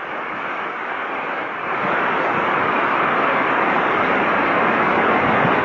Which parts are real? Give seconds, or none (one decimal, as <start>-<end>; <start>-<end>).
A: none

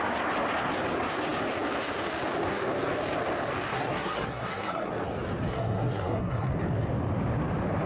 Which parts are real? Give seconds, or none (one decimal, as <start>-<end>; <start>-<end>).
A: 0.0-3.7; 4.9-5.5; 6.5-7.9

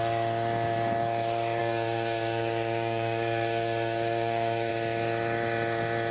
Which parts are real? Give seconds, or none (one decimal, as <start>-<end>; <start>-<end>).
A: 0.0-1.6; 4.7-6.1

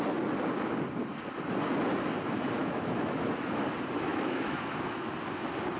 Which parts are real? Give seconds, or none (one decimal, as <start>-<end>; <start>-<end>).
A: 0.0-2.6; 3.2-4.1; 5.1-5.8

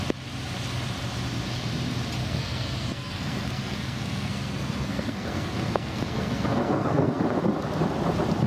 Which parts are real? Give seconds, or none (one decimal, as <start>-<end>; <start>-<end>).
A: 0.0-2.2; 7.2-8.5